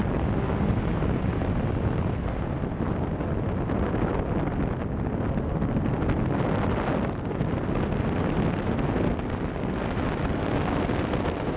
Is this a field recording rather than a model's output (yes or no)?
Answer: yes